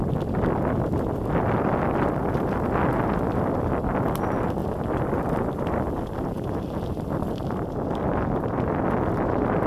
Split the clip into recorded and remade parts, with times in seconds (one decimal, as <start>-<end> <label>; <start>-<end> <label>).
0.0-4.6 recorded; 4.6-8.0 remade; 8.0-9.7 recorded